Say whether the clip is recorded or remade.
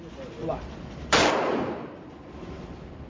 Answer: recorded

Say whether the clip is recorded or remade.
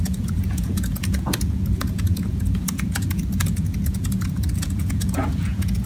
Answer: remade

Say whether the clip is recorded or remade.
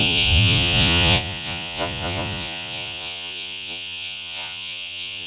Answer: remade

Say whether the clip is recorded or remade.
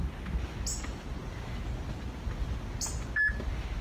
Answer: recorded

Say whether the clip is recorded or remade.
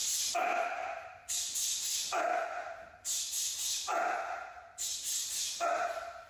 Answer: recorded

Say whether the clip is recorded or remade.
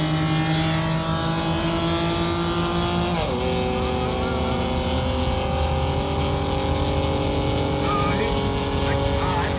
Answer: recorded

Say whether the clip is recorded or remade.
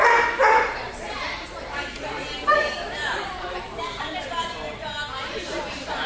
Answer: remade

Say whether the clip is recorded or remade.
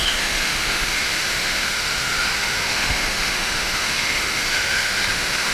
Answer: remade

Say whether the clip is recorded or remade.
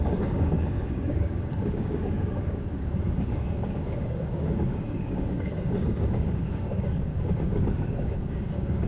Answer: remade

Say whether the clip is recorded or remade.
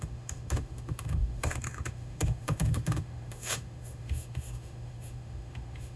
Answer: remade